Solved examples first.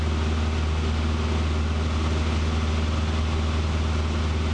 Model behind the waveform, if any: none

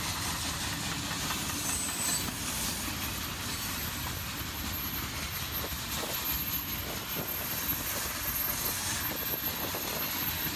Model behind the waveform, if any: none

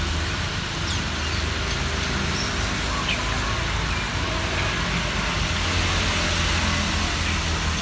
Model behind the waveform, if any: none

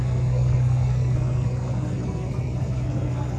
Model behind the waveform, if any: codec, SNAC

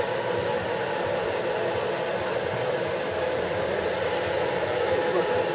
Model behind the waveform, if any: none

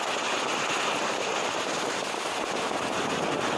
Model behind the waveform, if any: none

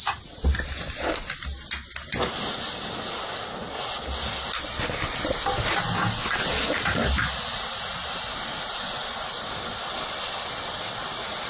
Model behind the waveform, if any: none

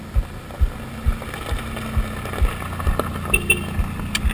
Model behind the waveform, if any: none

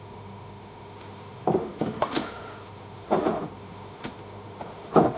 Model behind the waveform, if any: autoencoder, DAC-VAE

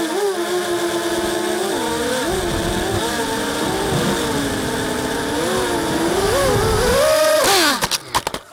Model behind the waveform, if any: none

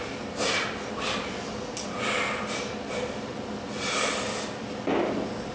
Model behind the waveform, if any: none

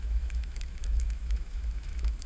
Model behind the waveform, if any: autoencoder, DAC-VAE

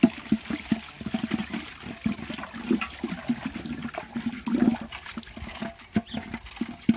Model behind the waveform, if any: none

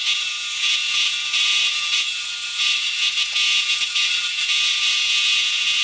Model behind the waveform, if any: vocoder, Vocos